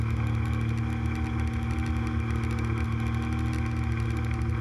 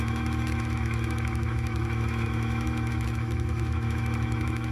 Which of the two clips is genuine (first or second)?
first